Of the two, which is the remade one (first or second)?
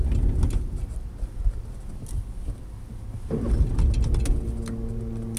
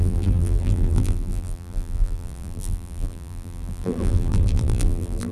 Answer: second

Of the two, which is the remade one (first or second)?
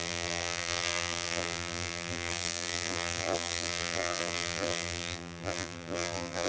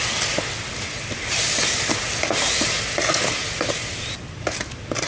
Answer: first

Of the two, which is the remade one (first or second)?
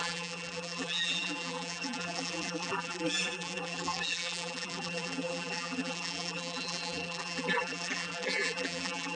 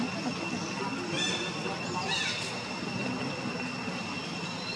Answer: first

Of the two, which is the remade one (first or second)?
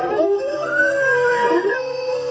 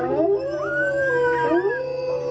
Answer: first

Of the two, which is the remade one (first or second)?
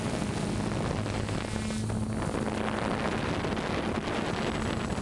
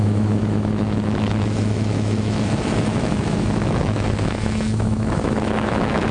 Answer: second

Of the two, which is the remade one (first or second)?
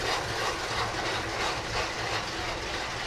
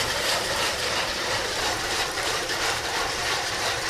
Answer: second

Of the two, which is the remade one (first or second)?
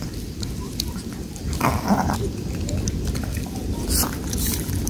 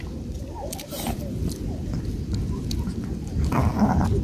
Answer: first